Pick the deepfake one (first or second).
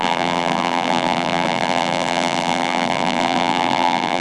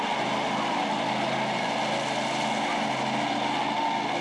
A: first